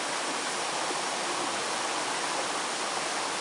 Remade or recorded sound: recorded